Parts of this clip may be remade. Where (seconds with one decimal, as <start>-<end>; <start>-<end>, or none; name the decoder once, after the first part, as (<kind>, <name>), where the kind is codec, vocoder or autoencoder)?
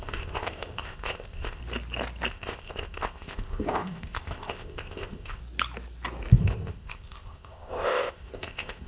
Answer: 0.0-1.6 (codec, ZipCodec); 2.3-5.4; 6.4-8.9